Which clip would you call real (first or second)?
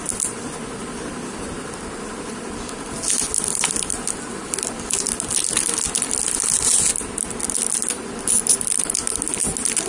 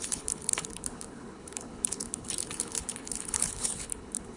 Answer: first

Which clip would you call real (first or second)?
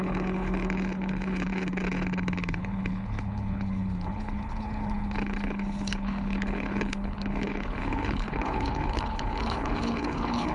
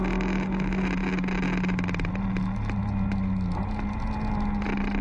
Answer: second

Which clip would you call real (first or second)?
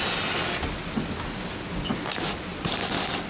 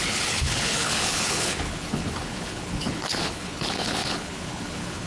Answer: first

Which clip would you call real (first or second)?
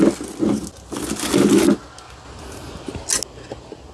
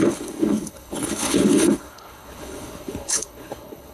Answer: first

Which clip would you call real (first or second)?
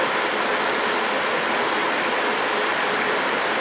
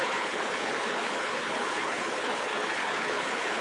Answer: first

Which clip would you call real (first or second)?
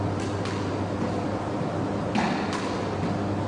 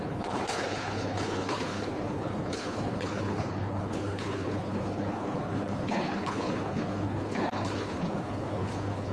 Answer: first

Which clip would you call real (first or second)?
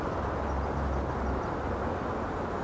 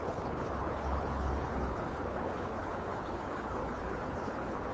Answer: first